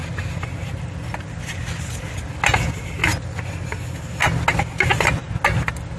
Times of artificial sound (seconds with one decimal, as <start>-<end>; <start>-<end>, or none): none